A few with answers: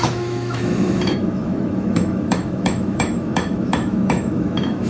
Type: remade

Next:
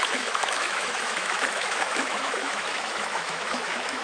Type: remade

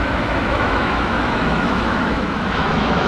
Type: remade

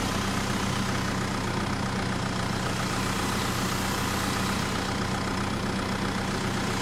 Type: recorded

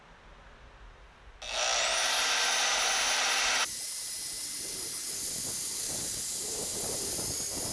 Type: recorded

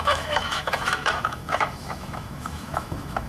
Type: remade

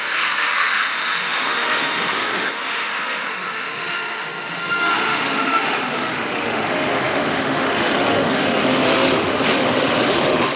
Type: remade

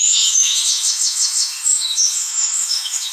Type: remade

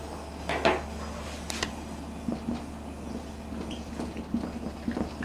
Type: recorded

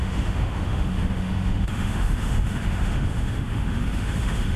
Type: remade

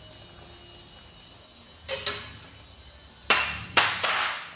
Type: recorded